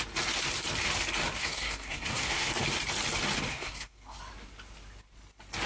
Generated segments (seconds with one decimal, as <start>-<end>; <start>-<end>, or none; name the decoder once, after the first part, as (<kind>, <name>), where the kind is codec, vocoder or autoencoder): 1.4-2.5 (codec, SNAC); 3.5-4.2